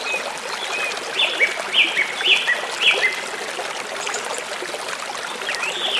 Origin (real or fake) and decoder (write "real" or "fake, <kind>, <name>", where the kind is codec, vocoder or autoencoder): real